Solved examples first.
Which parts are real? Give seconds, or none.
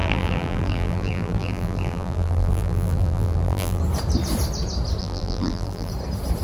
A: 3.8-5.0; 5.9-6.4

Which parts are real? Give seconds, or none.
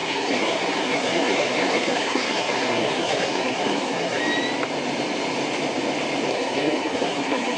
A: 4.2-6.3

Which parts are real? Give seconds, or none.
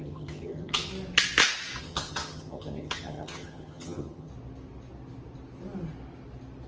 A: 0.9-1.8; 4.3-6.7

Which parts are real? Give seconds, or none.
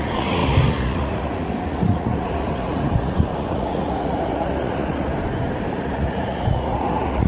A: 5.1-5.7